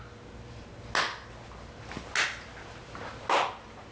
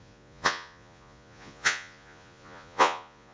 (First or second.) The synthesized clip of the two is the second